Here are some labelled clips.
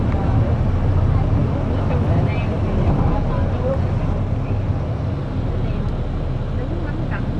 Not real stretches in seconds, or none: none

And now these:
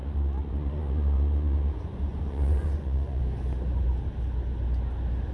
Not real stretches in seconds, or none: 0.0-3.2 (vocoder, Vocos)

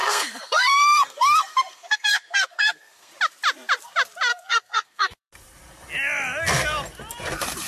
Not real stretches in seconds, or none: 0.0-3.1 (codec, SNAC); 4.3-5.3

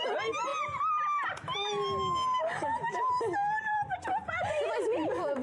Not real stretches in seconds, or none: 0.0-0.5 (vocoder, BigVGAN v2); 3.7-5.4

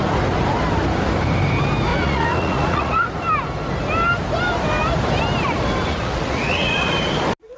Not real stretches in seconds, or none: 1.9-3.1 (vocoder, Vocos); 5.9-6.9

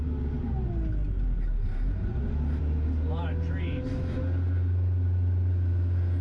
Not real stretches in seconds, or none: none